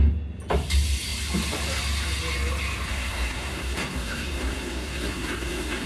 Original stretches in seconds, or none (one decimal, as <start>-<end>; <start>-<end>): 0.0-2.9